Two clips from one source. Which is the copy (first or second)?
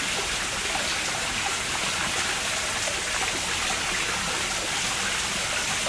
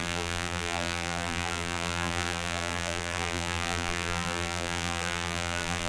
second